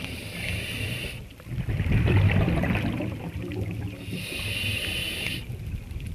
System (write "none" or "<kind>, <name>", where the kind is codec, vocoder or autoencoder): none